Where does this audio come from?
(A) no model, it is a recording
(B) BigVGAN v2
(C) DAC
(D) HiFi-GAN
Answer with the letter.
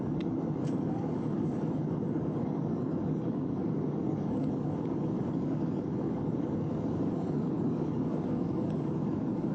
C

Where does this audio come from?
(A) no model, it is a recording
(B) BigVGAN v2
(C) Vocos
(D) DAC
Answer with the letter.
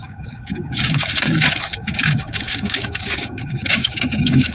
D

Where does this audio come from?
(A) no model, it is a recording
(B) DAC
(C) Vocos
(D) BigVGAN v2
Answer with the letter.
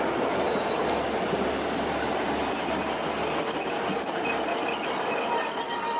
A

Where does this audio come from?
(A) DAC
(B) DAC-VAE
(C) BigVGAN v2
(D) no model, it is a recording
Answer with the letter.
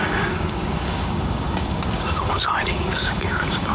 A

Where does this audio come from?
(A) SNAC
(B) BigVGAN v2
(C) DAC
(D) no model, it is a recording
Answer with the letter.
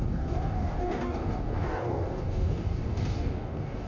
C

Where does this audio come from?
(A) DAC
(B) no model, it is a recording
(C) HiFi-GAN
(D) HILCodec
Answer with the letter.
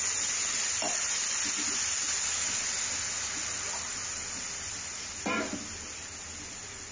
B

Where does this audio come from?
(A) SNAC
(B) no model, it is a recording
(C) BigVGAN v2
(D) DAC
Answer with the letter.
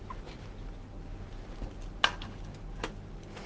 B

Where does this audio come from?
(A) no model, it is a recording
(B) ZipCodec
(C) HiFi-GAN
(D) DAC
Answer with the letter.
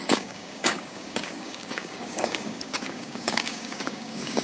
D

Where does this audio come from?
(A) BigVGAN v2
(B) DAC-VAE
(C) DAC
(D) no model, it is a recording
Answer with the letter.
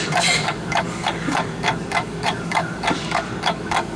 C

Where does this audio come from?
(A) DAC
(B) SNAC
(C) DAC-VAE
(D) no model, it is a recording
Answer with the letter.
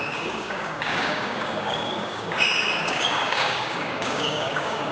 A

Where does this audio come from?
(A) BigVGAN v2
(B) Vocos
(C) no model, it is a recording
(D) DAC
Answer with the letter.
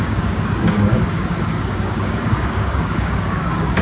D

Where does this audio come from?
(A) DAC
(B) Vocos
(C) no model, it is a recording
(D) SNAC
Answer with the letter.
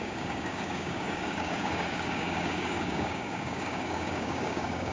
A